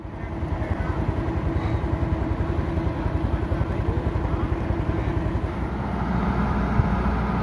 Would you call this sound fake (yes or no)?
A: no